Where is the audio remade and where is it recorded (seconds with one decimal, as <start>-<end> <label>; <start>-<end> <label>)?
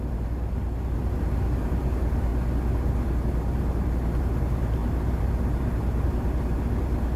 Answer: 0.0-2.3 remade; 2.3-4.2 recorded; 4.2-7.2 remade